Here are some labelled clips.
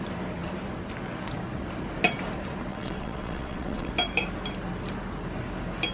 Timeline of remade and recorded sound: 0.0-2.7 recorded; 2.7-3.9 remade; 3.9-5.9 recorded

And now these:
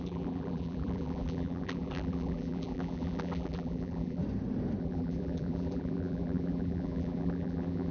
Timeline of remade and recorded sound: 0.0-4.2 remade; 4.2-4.8 recorded; 4.8-7.9 remade

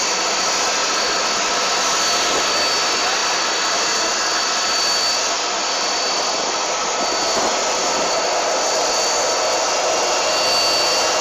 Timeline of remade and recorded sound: 0.0-11.2 recorded

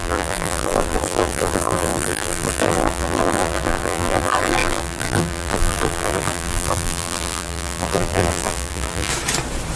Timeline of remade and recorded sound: 0.0-9.1 remade; 9.1-9.8 recorded

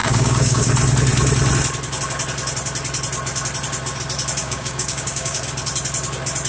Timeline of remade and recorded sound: 0.0-0.7 remade; 0.7-4.4 recorded; 4.4-5.4 remade; 5.4-6.5 recorded